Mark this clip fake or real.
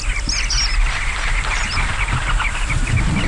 real